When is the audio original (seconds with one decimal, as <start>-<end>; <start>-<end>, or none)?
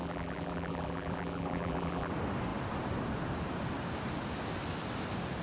2.1-5.4